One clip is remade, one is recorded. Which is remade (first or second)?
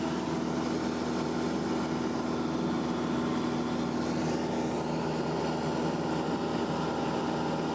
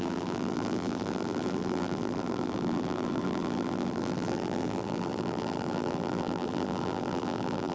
second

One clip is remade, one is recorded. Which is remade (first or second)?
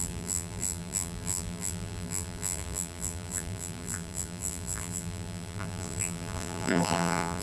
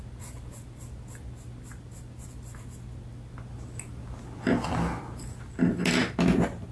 first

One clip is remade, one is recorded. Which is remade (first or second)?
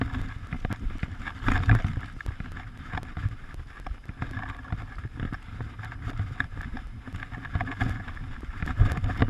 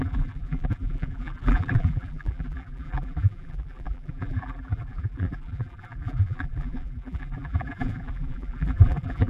second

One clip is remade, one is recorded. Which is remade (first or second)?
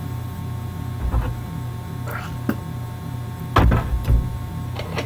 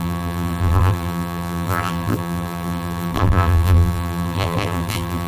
second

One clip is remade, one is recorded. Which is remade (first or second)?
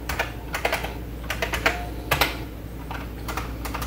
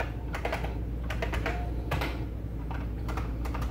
second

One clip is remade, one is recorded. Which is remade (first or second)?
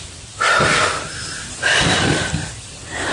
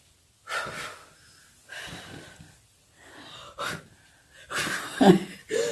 first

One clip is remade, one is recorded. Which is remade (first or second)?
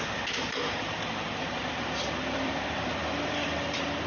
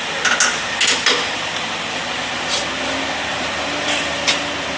first